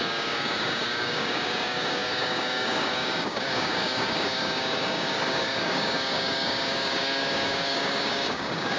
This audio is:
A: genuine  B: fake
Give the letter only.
B